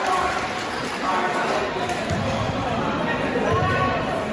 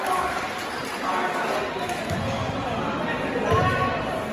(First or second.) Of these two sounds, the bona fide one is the second